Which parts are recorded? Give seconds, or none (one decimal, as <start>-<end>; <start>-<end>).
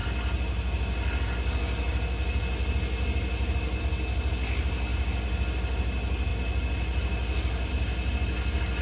0.0-8.8